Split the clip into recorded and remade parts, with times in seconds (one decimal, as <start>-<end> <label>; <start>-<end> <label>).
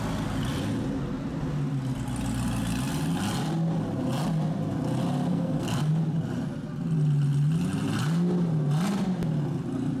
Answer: 0.0-5.3 recorded; 5.3-5.9 remade; 5.9-10.0 recorded